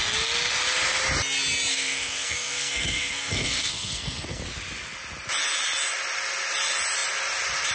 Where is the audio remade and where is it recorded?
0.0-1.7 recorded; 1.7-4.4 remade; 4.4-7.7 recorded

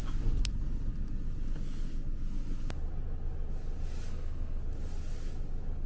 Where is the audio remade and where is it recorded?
0.0-4.1 recorded; 4.1-4.6 remade; 4.6-5.9 recorded

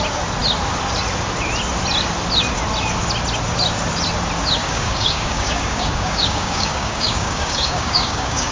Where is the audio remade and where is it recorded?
0.0-4.6 recorded; 4.6-8.5 remade

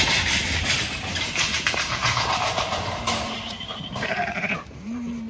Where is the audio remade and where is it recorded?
0.0-5.3 remade